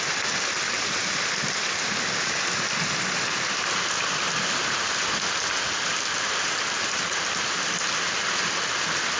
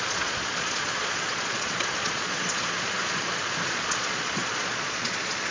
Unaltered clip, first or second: first